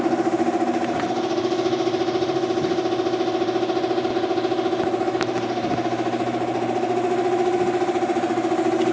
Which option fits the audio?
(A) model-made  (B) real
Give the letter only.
B